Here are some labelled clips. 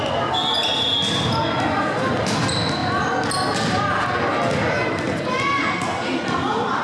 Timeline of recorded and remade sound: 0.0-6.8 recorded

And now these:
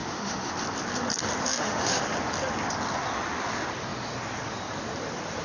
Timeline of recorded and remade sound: 0.0-0.5 remade; 0.5-1.4 recorded; 1.4-2.0 remade; 2.0-5.4 recorded

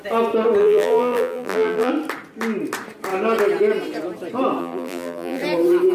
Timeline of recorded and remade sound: 0.0-0.6 recorded; 0.6-1.9 remade; 1.9-4.6 recorded; 4.6-5.4 remade; 5.4-5.9 recorded

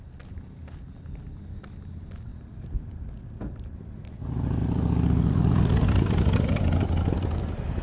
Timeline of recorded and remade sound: 0.0-2.3 recorded; 2.3-3.4 remade; 3.4-4.6 recorded; 4.6-7.8 remade

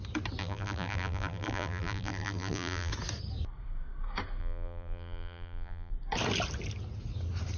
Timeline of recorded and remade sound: 0.0-0.4 recorded; 0.4-2.9 remade; 2.9-4.4 recorded; 4.4-5.9 remade; 5.9-7.6 recorded

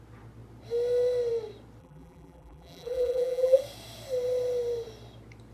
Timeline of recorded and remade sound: 0.0-1.8 recorded; 1.8-3.6 remade; 3.6-5.5 recorded

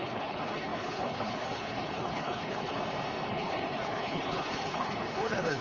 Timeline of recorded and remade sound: 0.0-2.8 remade; 2.8-3.3 recorded; 3.3-5.6 remade

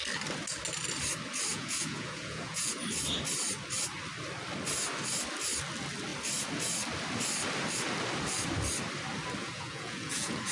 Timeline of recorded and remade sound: 0.0-1.5 recorded; 1.5-2.7 remade; 2.7-9.4 recorded; 9.4-10.5 remade